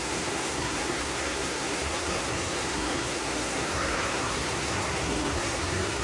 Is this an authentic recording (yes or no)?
no